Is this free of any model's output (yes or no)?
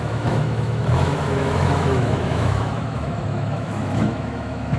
no